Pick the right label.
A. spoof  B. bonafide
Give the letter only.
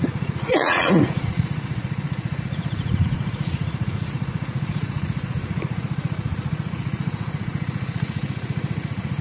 A